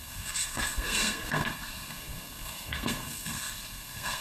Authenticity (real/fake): fake